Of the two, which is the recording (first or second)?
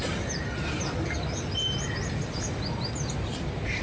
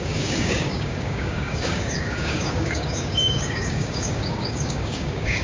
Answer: first